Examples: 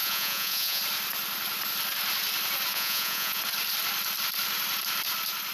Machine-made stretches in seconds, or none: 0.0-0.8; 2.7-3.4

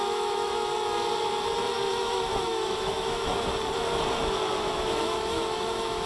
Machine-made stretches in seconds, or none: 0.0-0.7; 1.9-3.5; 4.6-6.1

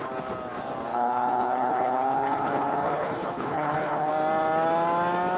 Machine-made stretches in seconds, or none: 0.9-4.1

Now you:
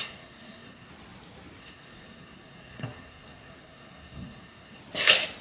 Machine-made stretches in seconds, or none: 0.0-0.9; 1.6-4.8

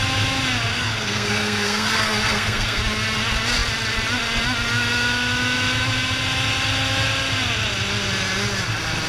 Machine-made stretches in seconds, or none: 0.7-2.8

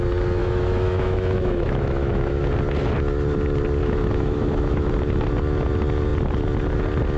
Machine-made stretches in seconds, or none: 0.4-2.4; 3.8-4.9

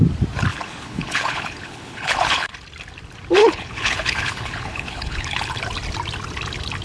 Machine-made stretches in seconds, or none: 0.5-2.5; 3.4-5.6